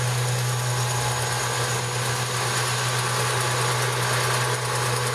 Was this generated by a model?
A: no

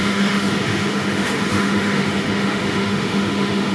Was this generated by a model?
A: yes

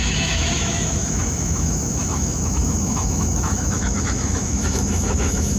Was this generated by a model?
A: yes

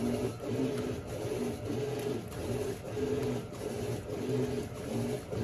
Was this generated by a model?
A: no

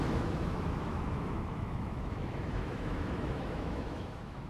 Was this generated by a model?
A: yes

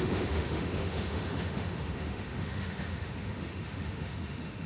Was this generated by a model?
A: yes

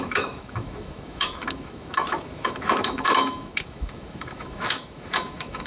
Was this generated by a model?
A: yes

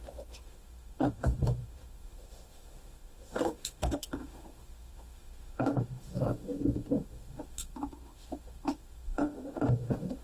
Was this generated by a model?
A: yes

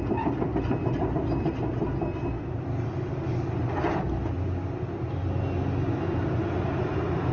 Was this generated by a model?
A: no